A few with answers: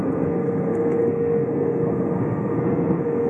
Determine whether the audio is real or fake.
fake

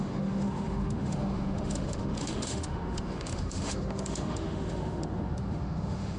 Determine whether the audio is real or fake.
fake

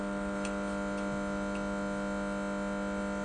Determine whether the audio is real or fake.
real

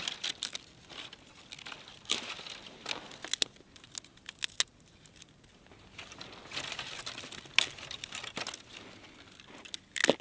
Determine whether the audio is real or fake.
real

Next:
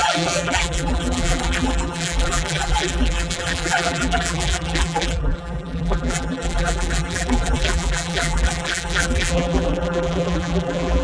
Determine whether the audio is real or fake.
fake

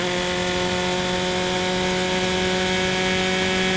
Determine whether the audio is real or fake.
real